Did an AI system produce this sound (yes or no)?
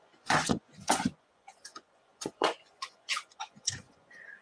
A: yes